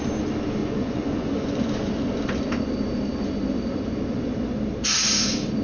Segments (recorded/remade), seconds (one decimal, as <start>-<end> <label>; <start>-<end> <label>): 0.0-0.6 recorded; 0.6-1.9 remade; 1.9-5.6 recorded